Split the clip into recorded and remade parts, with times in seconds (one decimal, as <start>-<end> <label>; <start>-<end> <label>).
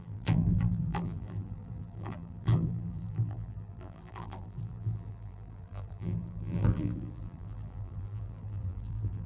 0.0-9.3 remade